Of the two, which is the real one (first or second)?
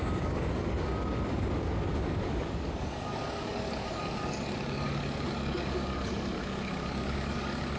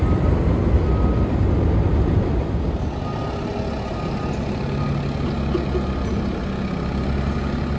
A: second